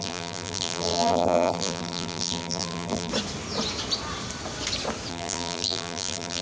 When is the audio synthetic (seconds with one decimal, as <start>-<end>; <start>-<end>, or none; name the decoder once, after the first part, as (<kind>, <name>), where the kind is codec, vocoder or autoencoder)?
0.0-3.1 (vocoder, BigVGAN v2); 5.1-6.4